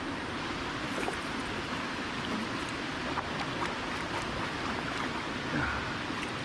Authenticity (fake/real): real